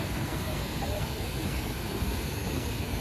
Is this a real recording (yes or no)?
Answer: no